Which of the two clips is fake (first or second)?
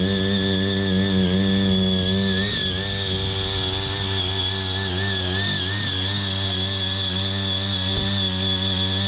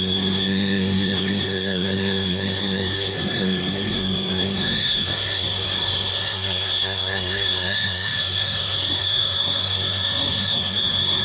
second